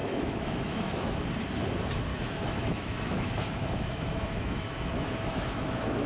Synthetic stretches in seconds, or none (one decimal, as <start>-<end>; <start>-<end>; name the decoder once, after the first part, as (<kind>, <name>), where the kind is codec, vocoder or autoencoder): 0.0-1.2 (autoencoder, DAC-VAE); 2.1-6.1